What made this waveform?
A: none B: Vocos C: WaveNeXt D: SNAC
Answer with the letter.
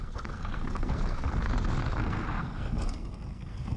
D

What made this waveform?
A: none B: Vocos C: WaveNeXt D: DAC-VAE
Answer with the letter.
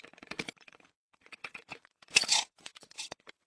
B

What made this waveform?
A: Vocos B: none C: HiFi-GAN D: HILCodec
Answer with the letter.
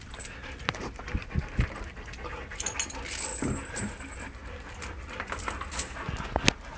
B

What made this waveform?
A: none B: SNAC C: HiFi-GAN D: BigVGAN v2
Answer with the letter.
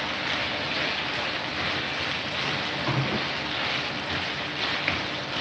A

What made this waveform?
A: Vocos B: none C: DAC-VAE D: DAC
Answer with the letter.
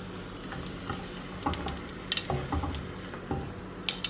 B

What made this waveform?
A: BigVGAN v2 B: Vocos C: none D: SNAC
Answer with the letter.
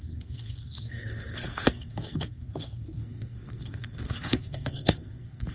D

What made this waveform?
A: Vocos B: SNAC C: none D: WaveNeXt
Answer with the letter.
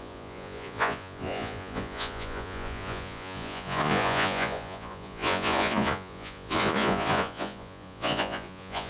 A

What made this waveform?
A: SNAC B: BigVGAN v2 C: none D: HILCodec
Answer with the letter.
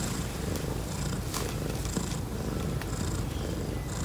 B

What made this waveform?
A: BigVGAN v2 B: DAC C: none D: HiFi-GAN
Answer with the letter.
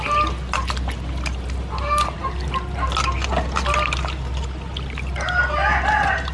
C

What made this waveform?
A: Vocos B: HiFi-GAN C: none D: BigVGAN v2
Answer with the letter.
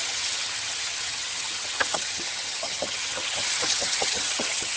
B